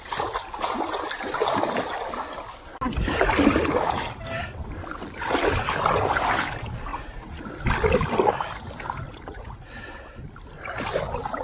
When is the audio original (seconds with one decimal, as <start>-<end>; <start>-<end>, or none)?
0.0-6.9; 7.4-9.1; 9.7-11.4